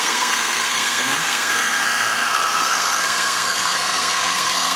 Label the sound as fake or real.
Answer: fake